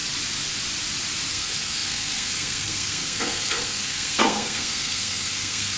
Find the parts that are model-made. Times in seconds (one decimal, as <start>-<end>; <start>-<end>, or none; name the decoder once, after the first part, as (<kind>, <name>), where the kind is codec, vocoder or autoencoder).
1.3-5.8 (codec, SNAC)